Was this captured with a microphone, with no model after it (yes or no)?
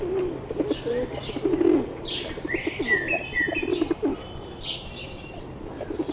yes